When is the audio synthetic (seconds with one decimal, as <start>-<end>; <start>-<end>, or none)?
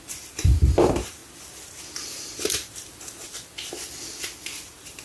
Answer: 0.0-1.2; 3.7-5.0